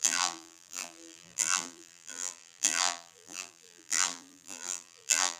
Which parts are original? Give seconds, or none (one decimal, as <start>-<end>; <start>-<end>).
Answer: none